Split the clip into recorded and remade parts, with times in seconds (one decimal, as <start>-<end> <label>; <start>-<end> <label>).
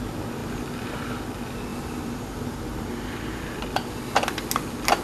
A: 0.0-1.7 recorded; 1.7-3.4 remade; 3.4-5.0 recorded